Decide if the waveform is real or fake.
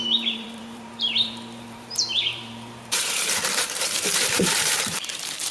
fake